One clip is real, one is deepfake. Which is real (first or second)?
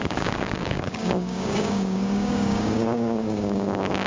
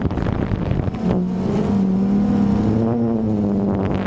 second